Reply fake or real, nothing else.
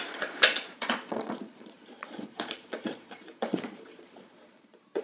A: fake